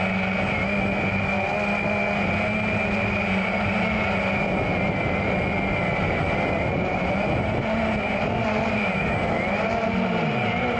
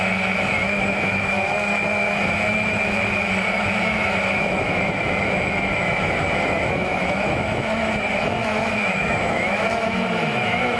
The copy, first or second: second